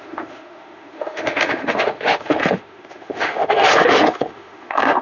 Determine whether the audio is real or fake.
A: fake